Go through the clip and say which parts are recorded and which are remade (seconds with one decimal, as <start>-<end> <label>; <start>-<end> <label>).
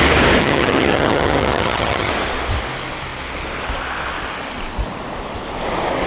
0.0-0.4 recorded; 0.4-2.1 remade; 2.1-6.1 recorded